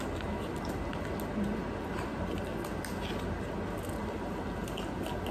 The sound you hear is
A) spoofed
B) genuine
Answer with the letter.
B